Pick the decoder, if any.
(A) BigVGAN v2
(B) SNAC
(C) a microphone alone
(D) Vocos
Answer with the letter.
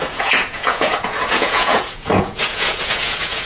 D